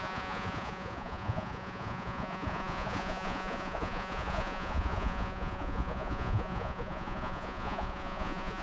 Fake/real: fake